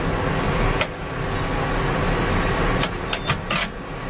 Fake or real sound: real